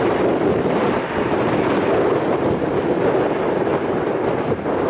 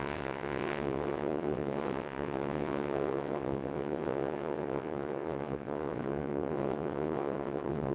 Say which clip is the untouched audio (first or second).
first